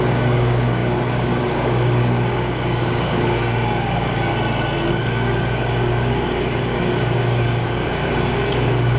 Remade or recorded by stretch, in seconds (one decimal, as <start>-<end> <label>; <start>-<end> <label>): 0.0-4.3 remade; 4.3-4.9 recorded; 4.9-9.0 remade